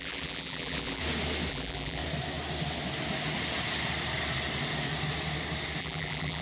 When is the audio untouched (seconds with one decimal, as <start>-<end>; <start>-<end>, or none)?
1.0-1.5; 2.0-5.8